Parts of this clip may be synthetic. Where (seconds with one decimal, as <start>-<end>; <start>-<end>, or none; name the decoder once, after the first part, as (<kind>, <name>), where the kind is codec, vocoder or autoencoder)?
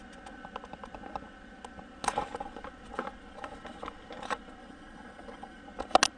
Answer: 4.6-5.6 (vocoder, Vocos)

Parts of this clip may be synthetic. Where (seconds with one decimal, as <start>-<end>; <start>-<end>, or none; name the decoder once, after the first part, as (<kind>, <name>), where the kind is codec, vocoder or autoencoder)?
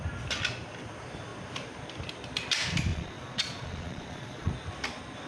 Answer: 2.9-4.5 (vocoder, Vocos)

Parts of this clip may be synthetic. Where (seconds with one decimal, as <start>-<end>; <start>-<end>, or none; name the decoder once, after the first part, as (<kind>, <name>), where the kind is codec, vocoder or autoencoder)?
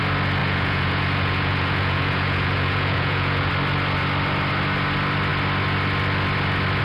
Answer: 0.4-3.5 (vocoder, Vocos)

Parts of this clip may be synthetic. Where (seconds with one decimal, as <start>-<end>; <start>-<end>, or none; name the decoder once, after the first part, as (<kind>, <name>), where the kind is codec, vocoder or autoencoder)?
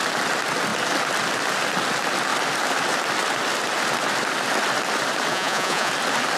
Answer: 5.3-5.9 (vocoder, Vocos)